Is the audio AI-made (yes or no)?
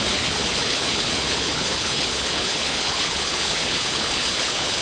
yes